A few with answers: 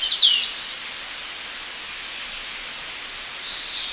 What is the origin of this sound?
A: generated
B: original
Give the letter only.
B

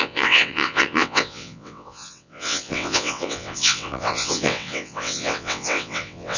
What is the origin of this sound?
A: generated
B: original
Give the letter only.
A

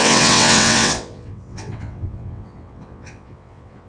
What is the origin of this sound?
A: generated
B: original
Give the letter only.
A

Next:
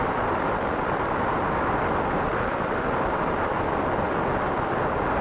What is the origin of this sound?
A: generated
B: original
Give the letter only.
B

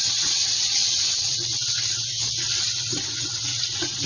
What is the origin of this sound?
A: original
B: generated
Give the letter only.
B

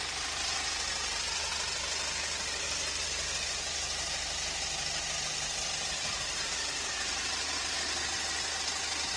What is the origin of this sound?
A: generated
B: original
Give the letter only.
B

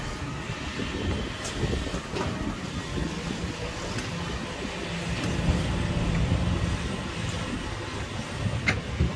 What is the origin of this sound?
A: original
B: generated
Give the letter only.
A